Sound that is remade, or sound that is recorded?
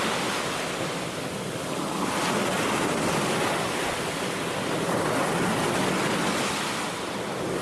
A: recorded